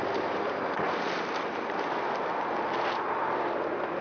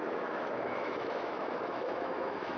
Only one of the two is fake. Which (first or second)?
second